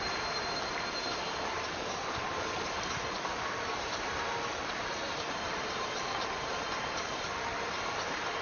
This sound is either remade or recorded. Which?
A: remade